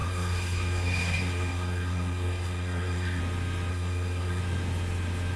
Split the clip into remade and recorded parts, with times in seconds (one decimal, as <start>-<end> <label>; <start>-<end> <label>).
0.0-3.2 remade; 3.2-3.7 recorded; 3.7-4.4 remade; 4.4-5.4 recorded